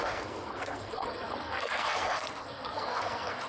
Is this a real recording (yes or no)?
no